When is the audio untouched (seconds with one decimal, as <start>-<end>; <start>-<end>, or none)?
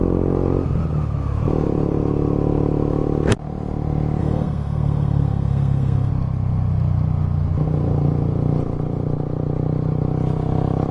0.0-4.2; 6.1-10.9